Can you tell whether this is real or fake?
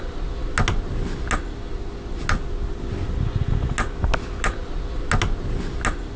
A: real